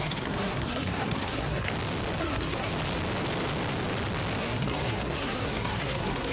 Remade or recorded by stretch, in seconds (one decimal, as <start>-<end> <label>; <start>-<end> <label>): 0.0-1.7 remade; 1.7-2.2 recorded; 2.2-2.7 remade; 2.7-4.4 recorded; 4.4-6.3 remade